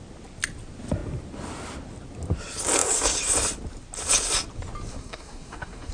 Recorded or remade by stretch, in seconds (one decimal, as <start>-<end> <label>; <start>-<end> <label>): 0.0-4.9 recorded; 4.9-5.9 remade